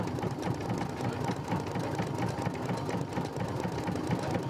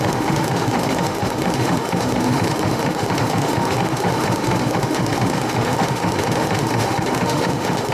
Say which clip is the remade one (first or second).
second